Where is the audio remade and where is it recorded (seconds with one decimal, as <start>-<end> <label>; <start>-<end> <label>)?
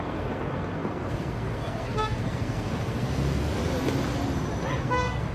0.0-3.6 remade; 3.6-4.8 recorded; 4.8-5.3 remade